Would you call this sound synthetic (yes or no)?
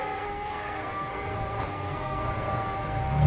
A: yes